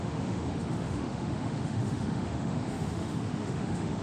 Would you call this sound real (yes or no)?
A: no